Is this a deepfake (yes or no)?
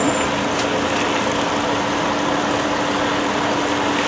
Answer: no